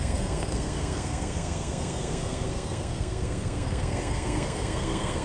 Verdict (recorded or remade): remade